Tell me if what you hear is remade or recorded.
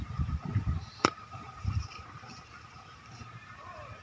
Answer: remade